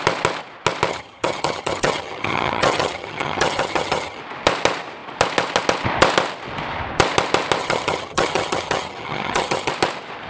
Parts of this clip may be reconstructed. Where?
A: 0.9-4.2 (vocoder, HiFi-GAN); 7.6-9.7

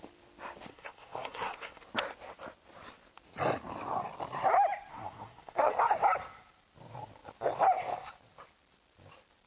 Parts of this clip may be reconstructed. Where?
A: 0.7-1.8 (codec, SNAC); 4.9-5.7

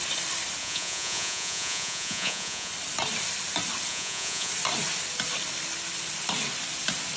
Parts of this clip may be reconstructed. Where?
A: 0.6-2.7 (vocoder, Vocos); 3.9-4.5

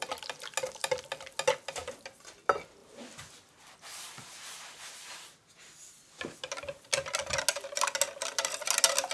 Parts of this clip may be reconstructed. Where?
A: none

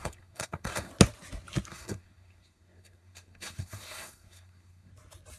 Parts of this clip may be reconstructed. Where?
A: 0.0-0.9 (codec, SNAC); 1.7-4.9

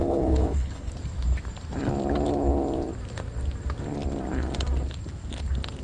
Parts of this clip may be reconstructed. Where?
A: 0.0-0.9 (codec, HILCodec)